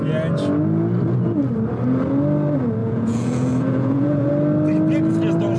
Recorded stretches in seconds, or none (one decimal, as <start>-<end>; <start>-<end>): 0.0-2.8; 4.3-5.6